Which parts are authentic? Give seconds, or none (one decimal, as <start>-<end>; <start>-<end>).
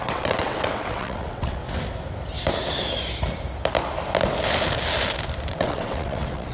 1.6-5.5